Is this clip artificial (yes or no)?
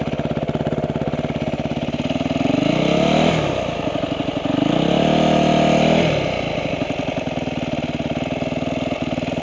no